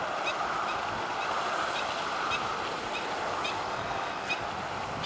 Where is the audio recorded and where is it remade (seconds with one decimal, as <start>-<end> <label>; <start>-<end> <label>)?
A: 0.0-3.7 recorded; 3.7-4.3 remade; 4.3-5.1 recorded